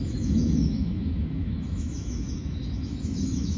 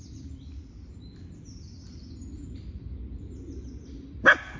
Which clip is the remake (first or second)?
first